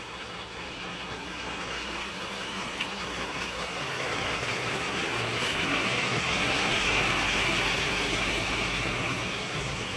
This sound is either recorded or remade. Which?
remade